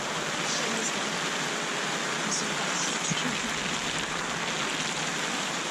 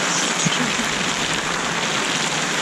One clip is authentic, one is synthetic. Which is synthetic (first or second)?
second